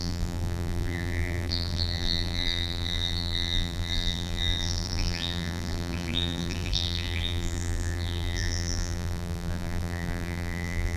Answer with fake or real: fake